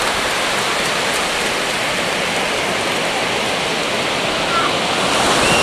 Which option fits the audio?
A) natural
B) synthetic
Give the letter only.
A